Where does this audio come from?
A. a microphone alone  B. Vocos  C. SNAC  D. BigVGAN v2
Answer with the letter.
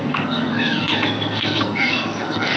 C